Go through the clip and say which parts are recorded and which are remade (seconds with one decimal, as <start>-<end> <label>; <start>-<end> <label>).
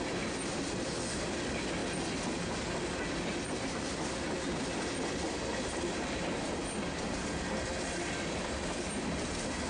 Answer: 0.0-9.7 recorded